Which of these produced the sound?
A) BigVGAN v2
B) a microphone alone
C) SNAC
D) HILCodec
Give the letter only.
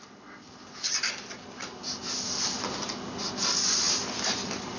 B